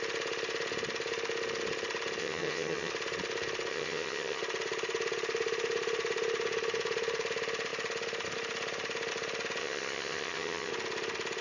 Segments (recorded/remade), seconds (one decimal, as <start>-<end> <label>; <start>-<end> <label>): 0.0-2.2 recorded; 2.2-2.9 remade; 2.9-3.7 recorded; 3.7-4.4 remade; 4.4-9.6 recorded; 9.6-10.7 remade; 10.7-11.4 recorded